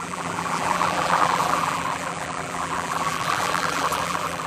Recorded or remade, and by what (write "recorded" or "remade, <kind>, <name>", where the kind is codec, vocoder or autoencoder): remade, vocoder, BigVGAN v2